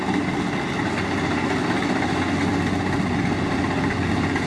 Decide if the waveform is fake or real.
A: real